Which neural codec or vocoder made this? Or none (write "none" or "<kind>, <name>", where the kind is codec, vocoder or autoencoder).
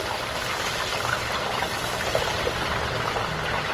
none